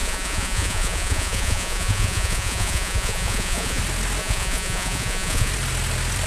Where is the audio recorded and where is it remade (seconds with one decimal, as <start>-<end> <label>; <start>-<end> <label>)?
0.0-3.8 remade; 3.8-4.2 recorded; 4.2-5.5 remade; 5.5-6.3 recorded